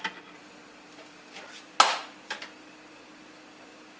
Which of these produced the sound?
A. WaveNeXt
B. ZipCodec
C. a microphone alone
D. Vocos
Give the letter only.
C